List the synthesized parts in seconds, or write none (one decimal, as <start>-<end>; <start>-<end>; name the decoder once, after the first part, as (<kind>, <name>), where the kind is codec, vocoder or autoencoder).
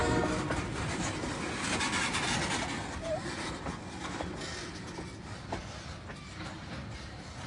none